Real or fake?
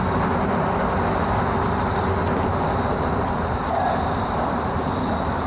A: real